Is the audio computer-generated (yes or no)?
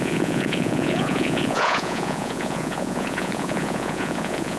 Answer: yes